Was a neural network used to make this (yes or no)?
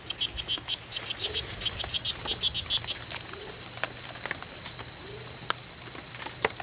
no